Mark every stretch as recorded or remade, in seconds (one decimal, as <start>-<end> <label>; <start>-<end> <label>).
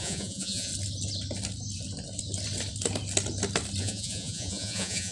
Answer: 0.0-0.7 remade; 0.7-3.8 recorded; 3.8-5.1 remade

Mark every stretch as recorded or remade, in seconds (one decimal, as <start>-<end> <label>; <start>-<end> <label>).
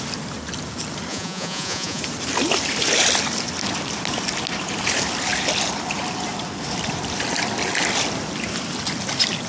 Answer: 0.0-1.1 recorded; 1.1-2.0 remade; 2.0-9.5 recorded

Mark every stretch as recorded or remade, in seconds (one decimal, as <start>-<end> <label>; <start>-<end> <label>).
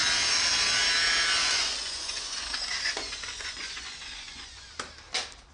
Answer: 0.0-1.4 recorded; 1.4-4.7 remade; 4.7-5.5 recorded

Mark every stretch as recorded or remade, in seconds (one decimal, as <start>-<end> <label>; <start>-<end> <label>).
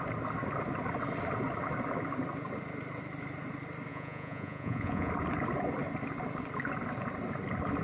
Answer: 0.0-3.9 recorded; 3.9-5.1 remade; 5.1-7.8 recorded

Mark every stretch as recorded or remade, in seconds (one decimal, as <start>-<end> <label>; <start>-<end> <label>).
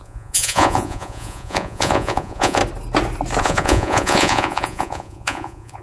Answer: 0.0-2.6 remade; 2.6-3.4 recorded; 3.4-5.8 remade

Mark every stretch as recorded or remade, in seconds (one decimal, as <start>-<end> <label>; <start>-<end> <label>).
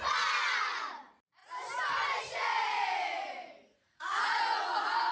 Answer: 0.0-1.4 remade; 1.4-2.2 recorded; 2.2-5.1 remade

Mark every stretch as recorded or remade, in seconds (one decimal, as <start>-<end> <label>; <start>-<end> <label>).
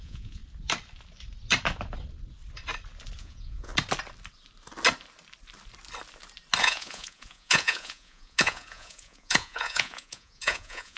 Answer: 0.0-0.4 remade; 0.4-3.2 recorded; 3.2-3.7 remade; 3.7-6.6 recorded; 6.6-11.0 remade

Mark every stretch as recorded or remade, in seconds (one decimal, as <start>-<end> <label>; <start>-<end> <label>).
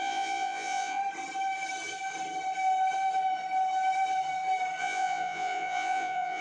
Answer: 0.0-1.0 remade; 1.0-4.8 recorded; 4.8-6.4 remade